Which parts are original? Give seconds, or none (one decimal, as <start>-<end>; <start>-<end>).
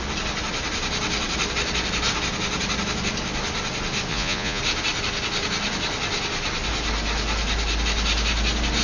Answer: 0.0-4.1; 4.6-8.8